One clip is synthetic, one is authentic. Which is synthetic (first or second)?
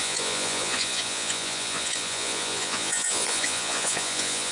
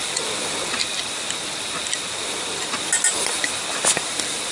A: first